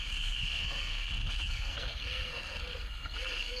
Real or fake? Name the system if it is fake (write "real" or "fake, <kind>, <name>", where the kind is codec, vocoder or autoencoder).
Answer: fake, codec, SNAC